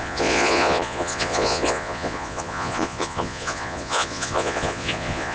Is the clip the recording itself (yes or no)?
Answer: no